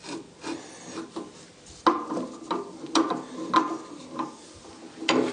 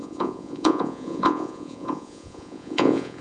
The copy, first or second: second